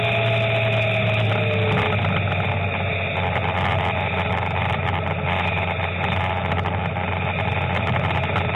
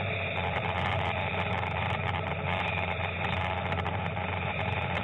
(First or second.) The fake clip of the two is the second